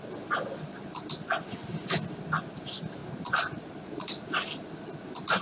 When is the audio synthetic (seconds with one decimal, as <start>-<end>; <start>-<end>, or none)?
3.0-4.8